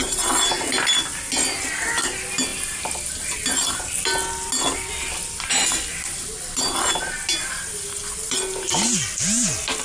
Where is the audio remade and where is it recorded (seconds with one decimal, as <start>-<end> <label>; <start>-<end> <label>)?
0.0-9.8 recorded